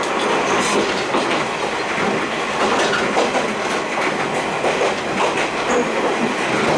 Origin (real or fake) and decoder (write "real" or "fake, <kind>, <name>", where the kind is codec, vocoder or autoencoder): real